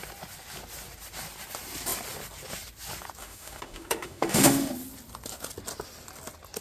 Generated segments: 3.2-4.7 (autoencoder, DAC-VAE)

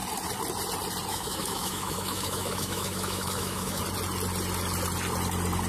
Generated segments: 1.1-3.8 (autoencoder, DAC-VAE)

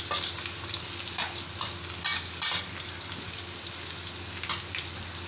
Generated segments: none

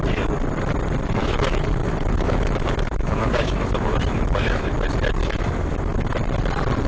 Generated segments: 1.2-4.7 (autoencoder, DAC-VAE); 5.2-6.1

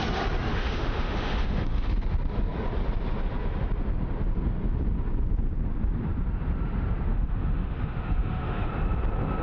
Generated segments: 0.5-1.9 (autoencoder, DAC-VAE); 7.1-8.7

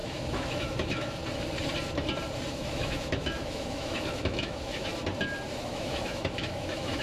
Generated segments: 0.0-1.2 (autoencoder, DAC-VAE); 2.5-4.9; 5.6-7.0

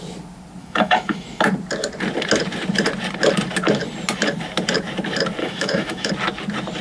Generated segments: 0.6-1.4 (autoencoder, DAC-VAE); 5.4-6.1